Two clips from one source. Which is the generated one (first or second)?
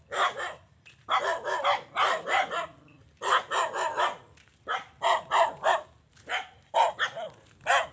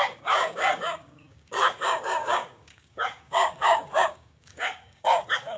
second